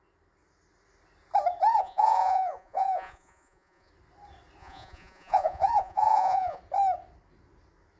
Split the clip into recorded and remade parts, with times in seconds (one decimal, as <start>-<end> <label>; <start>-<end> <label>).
0.0-1.7 recorded; 1.7-3.9 remade; 3.9-4.6 recorded; 4.6-6.6 remade; 6.6-8.0 recorded